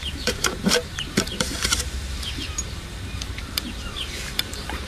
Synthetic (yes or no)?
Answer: yes